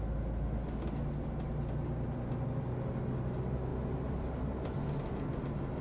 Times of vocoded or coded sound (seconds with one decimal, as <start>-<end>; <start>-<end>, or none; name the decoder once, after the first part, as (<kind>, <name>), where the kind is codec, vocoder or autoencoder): none